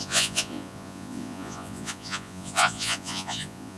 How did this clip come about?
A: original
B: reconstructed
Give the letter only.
B